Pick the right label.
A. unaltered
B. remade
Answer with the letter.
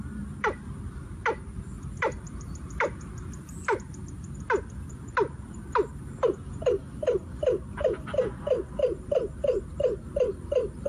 A